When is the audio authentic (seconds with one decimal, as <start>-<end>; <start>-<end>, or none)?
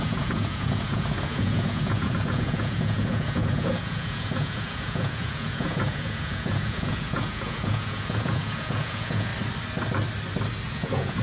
9.3-10.7